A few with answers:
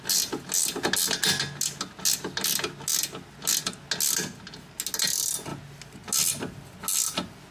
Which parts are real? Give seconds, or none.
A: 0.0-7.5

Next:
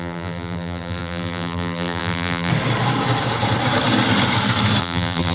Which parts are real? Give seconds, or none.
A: 2.5-4.8

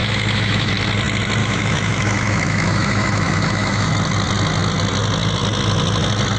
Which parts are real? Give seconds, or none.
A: 0.7-1.4; 3.9-6.4